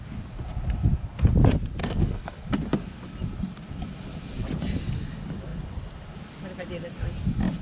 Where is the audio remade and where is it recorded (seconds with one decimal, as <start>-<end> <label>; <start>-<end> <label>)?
0.0-1.8 recorded; 1.8-2.3 remade; 2.3-7.6 recorded